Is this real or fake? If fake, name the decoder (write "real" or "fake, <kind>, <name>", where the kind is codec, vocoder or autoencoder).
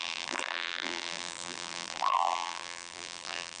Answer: fake, vocoder, BigVGAN v2